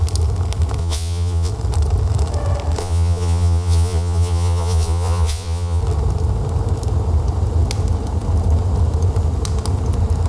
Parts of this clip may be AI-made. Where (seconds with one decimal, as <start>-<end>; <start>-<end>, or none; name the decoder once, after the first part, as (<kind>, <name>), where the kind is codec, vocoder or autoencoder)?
0.8-1.5 (vocoder, Vocos); 2.8-5.8